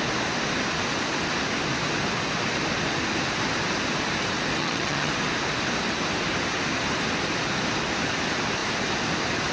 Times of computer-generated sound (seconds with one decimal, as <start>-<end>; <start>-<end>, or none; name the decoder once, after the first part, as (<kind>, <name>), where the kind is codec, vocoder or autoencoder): 4.6-5.1 (vocoder, HiFi-GAN)